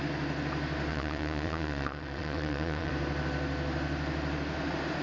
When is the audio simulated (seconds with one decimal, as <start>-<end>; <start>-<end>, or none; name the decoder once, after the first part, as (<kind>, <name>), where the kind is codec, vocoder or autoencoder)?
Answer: 0.9-2.9 (vocoder, WaveNeXt)